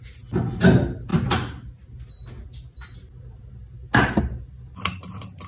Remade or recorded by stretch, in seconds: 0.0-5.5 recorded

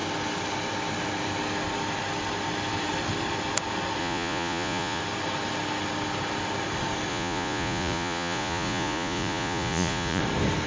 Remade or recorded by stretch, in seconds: 0.0-4.0 recorded; 4.0-5.0 remade; 5.0-7.1 recorded; 7.1-10.2 remade; 10.2-10.7 recorded

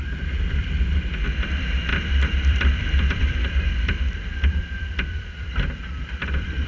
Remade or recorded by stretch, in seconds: 0.0-6.7 remade

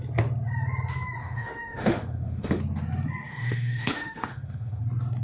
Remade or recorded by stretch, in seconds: 0.0-1.2 recorded; 1.2-2.6 remade; 2.6-3.3 recorded; 3.3-4.8 remade; 4.8-5.2 recorded

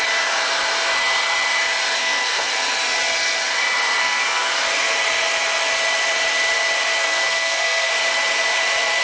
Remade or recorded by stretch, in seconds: 0.0-2.0 recorded; 2.0-2.5 remade; 2.5-4.0 recorded; 4.0-4.5 remade; 4.5-7.0 recorded; 7.0-7.9 remade; 7.9-9.0 recorded